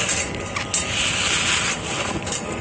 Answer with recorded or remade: recorded